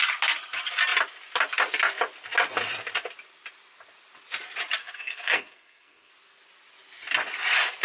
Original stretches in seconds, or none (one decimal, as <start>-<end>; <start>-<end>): 0.0-4.8; 6.1-7.8